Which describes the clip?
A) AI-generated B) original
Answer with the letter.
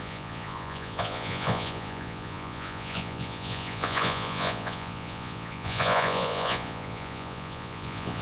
A